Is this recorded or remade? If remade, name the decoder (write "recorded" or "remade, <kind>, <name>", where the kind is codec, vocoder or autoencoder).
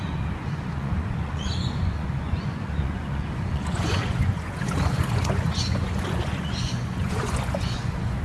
remade, vocoder, Vocos